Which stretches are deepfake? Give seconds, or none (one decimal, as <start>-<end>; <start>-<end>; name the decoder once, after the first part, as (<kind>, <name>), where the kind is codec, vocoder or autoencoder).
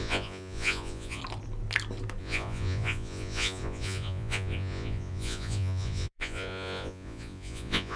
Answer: 0.0-1.2 (vocoder, Vocos); 2.2-8.0